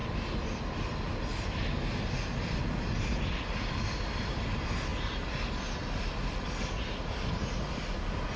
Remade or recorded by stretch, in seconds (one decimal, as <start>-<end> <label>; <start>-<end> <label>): 0.0-8.4 recorded